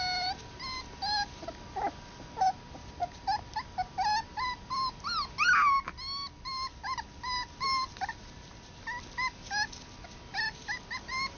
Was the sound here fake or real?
real